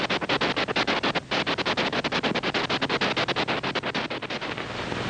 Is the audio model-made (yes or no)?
no